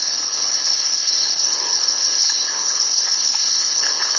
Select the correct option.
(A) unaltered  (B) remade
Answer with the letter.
B